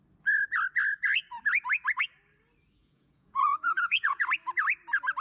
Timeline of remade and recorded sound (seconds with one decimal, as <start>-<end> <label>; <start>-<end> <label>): 0.0-2.8 recorded; 2.8-4.2 remade; 4.2-5.2 recorded